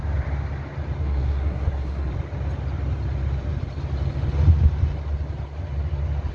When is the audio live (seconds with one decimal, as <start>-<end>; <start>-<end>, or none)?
0.0-1.0; 2.1-6.3